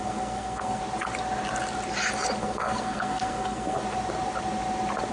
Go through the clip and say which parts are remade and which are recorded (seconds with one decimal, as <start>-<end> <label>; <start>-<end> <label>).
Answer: 0.0-0.8 remade; 0.8-2.4 recorded; 2.4-3.8 remade; 3.8-5.1 recorded